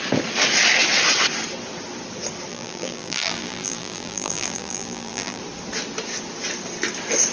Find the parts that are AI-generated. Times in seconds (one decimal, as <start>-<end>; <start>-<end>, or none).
2.5-5.4